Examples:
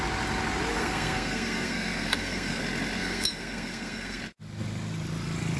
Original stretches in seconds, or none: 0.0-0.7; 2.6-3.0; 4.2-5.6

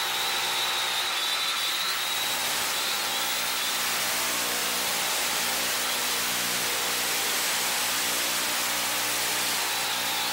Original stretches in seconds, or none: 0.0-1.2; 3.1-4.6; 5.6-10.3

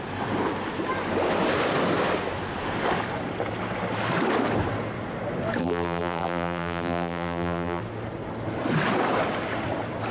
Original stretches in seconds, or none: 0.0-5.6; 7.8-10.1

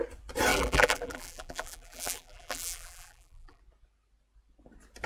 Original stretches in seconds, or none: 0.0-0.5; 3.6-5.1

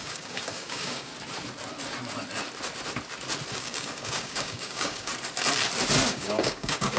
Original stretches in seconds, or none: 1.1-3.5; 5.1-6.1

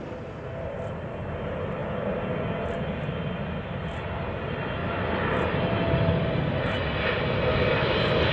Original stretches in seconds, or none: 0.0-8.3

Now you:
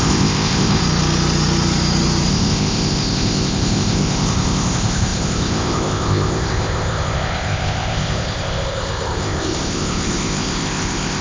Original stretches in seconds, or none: 0.8-2.3

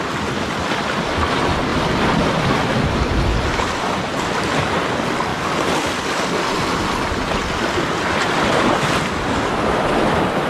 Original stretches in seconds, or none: 0.0-10.5